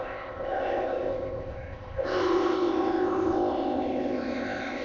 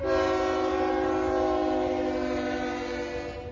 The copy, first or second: first